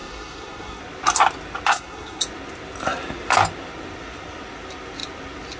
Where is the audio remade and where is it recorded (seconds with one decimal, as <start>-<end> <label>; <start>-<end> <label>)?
0.0-0.8 remade; 0.8-1.7 recorded; 1.7-2.2 remade; 2.2-5.6 recorded